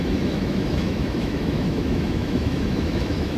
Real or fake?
fake